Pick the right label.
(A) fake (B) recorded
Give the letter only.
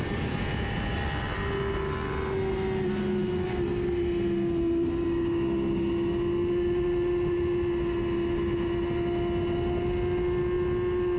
B